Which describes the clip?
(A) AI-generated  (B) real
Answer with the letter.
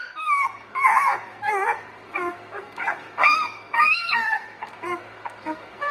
A